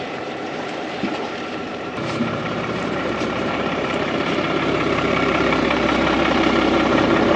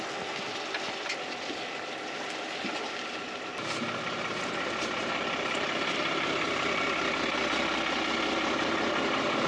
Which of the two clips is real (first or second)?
second